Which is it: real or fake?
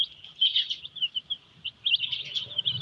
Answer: real